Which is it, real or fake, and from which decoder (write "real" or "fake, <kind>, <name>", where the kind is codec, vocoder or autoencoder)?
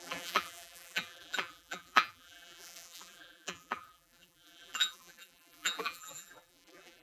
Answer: fake, vocoder, BigVGAN v2